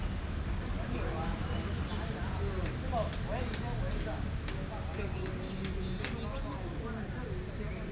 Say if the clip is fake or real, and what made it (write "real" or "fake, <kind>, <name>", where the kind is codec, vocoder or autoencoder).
real